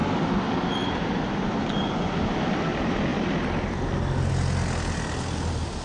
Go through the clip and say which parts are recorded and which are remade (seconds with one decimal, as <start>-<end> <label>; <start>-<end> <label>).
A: 0.0-5.8 recorded